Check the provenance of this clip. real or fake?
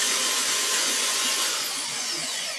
fake